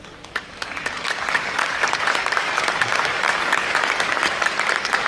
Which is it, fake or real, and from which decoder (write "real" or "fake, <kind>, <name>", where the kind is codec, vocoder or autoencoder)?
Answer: fake, codec, DAC